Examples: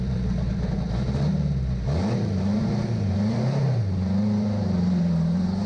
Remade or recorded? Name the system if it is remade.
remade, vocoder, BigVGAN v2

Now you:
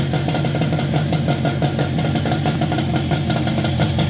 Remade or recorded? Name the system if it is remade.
recorded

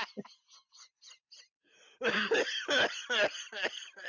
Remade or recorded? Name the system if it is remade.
recorded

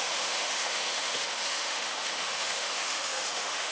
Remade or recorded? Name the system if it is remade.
remade, autoencoder, DAC-VAE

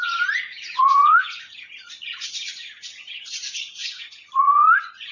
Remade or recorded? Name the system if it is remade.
remade, vocoder, Vocos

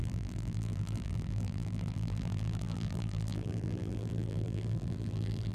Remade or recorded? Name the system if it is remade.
remade, vocoder, BigVGAN v2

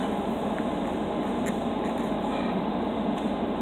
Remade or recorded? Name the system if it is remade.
remade, vocoder, BigVGAN v2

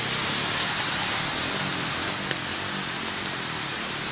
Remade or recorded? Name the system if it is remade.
recorded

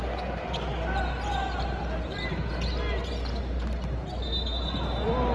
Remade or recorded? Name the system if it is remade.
recorded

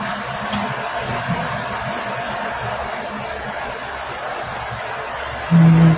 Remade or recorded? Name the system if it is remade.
recorded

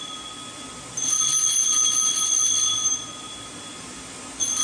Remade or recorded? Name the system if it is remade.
recorded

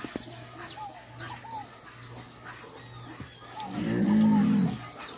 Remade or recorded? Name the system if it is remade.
recorded